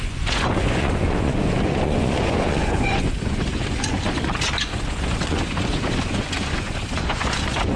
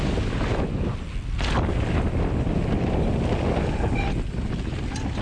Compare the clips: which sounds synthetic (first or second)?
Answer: first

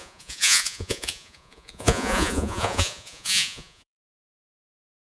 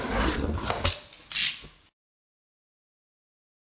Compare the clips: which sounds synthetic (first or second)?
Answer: first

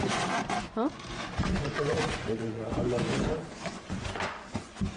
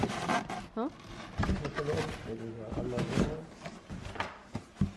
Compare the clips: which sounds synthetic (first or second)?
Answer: first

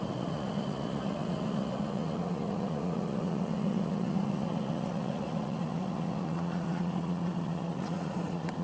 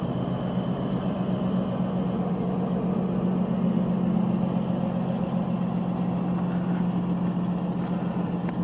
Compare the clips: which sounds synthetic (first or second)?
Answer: first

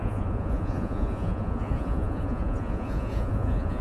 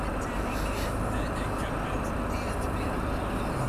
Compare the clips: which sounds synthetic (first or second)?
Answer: first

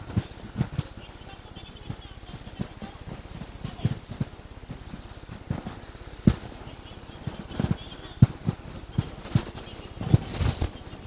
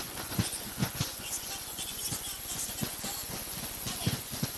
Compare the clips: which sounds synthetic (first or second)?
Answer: second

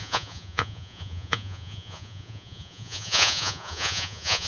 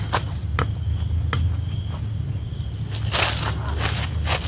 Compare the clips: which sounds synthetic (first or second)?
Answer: first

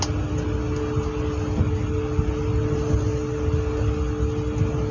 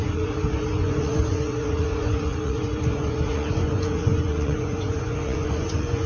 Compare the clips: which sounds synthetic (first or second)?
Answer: second